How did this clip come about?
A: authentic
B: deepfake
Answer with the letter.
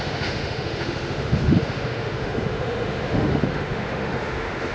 B